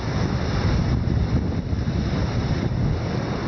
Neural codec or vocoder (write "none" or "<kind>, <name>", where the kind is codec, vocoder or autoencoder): none